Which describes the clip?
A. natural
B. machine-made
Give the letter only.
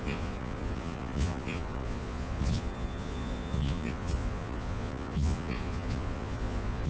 B